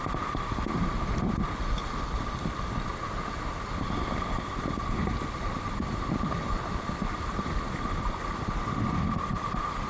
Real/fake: real